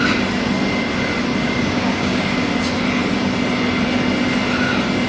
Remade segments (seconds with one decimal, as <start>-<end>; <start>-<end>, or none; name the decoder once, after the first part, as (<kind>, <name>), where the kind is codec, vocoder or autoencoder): 1.4-2.5 (codec, DAC)